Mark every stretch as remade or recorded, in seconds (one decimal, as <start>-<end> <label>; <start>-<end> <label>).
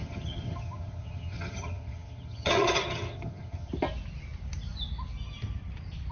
0.0-3.7 remade; 3.7-6.1 recorded